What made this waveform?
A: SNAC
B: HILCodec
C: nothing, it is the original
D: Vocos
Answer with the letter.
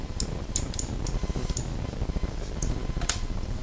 C